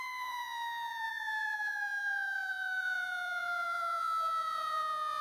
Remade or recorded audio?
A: remade